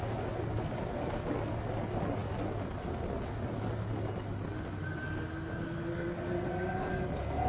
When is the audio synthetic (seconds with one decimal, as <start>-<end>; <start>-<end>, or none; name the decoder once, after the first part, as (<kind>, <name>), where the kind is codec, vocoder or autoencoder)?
none

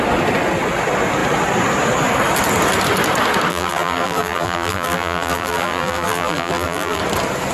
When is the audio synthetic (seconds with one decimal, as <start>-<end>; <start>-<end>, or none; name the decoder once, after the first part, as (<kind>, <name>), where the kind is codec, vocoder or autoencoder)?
3.5-7.0 (vocoder, BigVGAN v2)

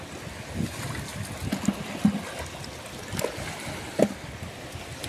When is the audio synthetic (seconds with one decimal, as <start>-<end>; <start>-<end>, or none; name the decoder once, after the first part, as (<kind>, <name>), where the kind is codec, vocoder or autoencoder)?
none

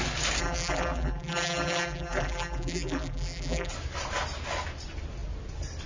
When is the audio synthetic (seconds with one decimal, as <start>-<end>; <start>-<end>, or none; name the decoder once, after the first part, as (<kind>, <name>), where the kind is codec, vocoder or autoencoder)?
0.4-3.7 (vocoder, BigVGAN v2)